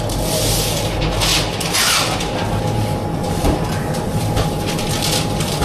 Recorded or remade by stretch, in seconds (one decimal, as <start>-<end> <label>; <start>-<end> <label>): 0.0-1.3 recorded; 1.3-4.2 remade; 4.2-5.6 recorded